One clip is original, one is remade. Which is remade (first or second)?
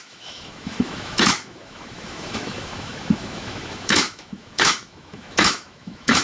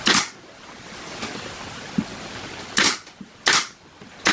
first